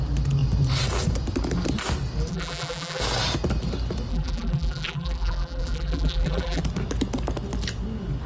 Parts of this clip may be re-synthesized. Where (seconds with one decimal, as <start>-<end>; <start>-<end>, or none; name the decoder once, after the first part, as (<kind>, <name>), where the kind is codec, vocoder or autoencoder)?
2.3-3.0 (vocoder, BigVGAN v2); 4.1-6.6